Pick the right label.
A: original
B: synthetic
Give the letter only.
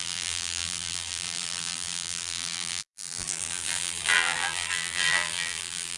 B